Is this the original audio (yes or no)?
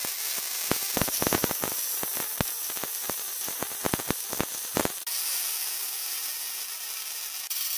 yes